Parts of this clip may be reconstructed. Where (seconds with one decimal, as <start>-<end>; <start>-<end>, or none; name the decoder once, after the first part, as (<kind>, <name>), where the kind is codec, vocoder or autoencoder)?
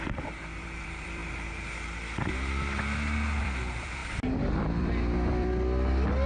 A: 0.0-1.2 (vocoder, BigVGAN v2); 3.4-6.3